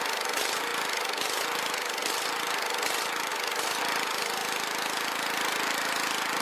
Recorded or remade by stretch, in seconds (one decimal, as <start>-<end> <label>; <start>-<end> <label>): 0.0-6.4 recorded